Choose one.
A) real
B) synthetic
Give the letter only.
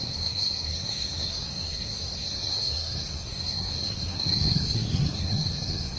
B